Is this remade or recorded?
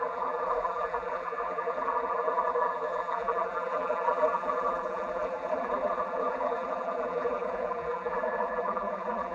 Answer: remade